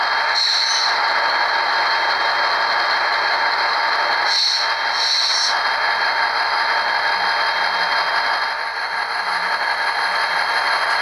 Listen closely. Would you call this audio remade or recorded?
recorded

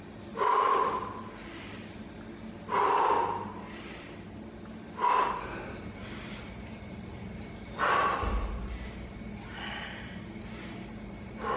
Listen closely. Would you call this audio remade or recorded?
recorded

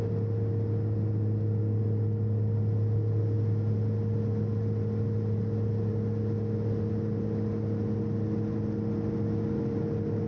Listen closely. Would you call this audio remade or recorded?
recorded